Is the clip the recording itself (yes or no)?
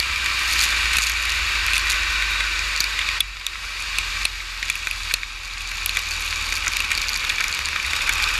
yes